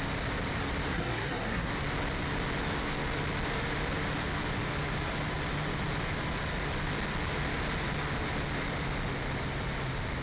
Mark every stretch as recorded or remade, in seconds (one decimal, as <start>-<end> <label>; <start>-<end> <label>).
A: 0.0-0.9 recorded; 0.9-1.7 remade; 1.7-10.2 recorded